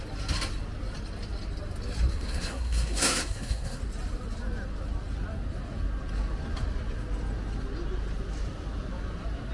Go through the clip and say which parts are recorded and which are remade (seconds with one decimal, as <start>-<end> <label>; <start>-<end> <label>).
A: 0.0-2.1 recorded; 2.1-3.8 remade; 3.8-9.5 recorded